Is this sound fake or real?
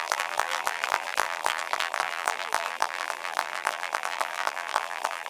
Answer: fake